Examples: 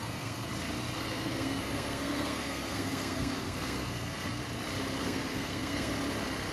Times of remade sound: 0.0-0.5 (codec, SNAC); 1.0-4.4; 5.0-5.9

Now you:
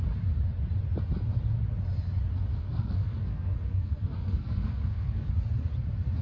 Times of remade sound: 2.5-5.3 (codec, SNAC)